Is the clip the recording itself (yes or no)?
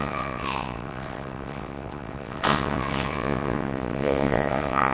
no